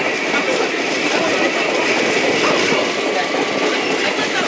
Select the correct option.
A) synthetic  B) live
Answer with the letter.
B